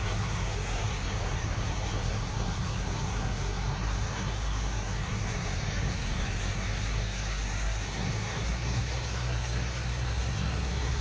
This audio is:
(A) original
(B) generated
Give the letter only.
B